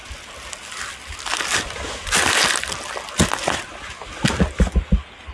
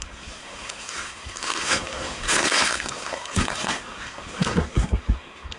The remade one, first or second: second